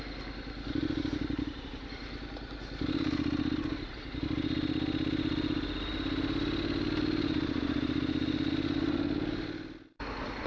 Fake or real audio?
real